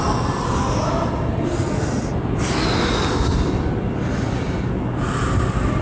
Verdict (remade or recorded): recorded